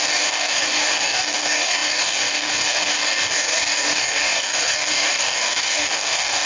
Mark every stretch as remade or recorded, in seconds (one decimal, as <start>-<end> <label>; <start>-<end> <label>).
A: 0.0-6.5 remade